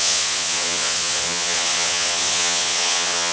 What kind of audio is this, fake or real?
fake